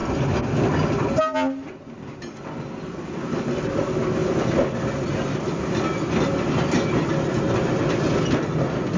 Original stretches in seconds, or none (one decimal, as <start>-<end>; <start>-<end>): 0.0-9.0